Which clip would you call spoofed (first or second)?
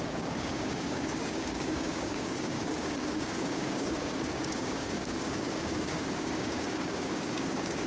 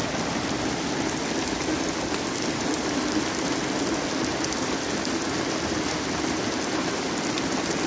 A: first